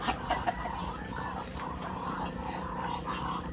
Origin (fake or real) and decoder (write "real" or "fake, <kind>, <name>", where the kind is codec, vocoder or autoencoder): real